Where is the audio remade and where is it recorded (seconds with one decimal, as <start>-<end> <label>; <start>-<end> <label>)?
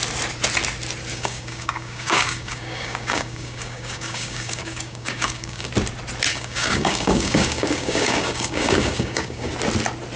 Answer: 0.0-1.1 recorded; 1.1-5.7 remade; 5.7-6.3 recorded; 6.3-9.5 remade; 9.5-10.2 recorded